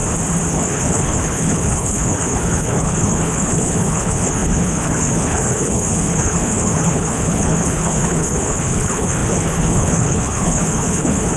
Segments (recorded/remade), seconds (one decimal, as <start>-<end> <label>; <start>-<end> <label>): 0.0-0.5 recorded; 0.5-11.4 remade